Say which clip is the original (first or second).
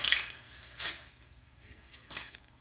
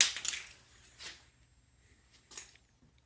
second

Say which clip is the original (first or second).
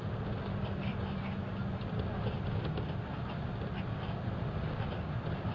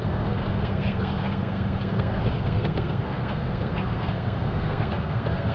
first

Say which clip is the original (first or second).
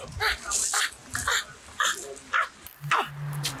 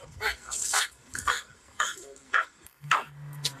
first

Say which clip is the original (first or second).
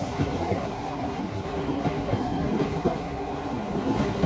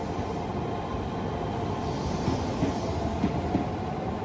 second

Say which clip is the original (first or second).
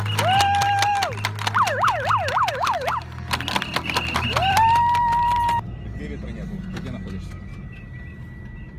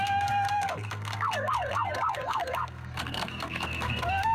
first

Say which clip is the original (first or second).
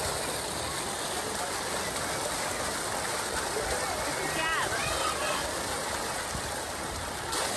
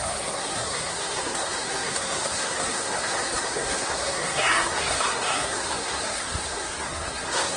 first